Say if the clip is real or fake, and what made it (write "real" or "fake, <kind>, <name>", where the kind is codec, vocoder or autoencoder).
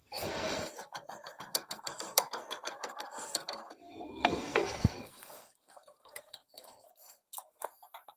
fake, codec, SNAC